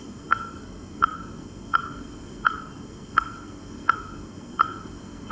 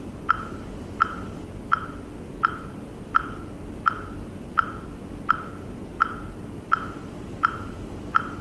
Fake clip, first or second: first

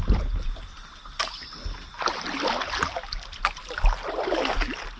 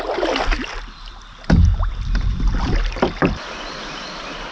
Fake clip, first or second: second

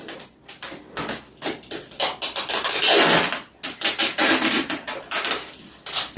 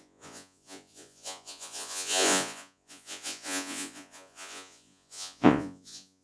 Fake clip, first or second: second